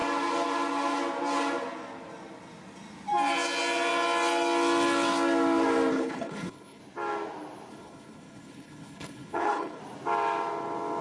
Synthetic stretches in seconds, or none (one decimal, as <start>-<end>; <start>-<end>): 5.9-6.8; 7.7-9.8